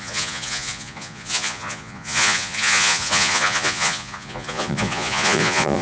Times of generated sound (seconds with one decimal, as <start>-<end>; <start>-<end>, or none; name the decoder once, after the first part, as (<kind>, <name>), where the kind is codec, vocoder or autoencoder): 0.0-5.8 (vocoder, Vocos)